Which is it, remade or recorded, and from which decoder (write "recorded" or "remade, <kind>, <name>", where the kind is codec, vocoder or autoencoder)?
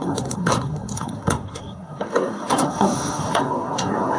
remade, codec, SNAC